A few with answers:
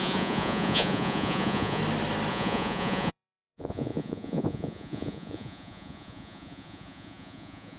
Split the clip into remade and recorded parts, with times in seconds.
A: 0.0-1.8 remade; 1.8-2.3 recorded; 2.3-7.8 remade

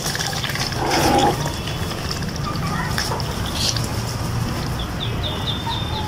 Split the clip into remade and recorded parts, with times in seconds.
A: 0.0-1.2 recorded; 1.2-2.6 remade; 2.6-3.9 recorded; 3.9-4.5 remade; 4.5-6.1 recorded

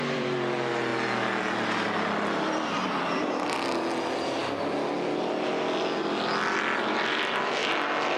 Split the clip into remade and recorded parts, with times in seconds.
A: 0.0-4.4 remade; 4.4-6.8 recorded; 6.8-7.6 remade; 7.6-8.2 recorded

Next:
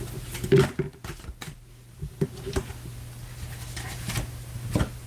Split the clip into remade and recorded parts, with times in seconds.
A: 0.0-5.1 recorded

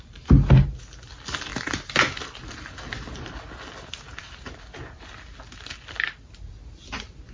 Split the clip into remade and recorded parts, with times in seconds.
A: 0.0-7.3 recorded

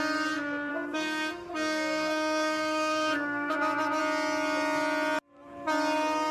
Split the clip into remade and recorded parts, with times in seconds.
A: 0.0-0.7 recorded; 0.7-4.0 remade; 4.0-6.3 recorded